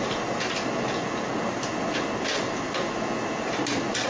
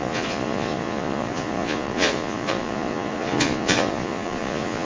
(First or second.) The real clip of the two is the first